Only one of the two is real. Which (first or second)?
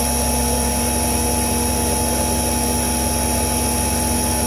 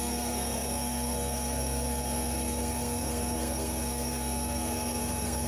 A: first